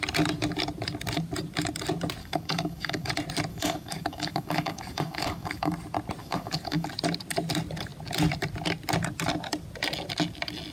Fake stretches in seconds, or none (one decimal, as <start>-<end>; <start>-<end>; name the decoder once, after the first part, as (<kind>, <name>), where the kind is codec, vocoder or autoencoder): 2.2-3.1 (codec, DAC); 3.5-5.7; 6.2-6.9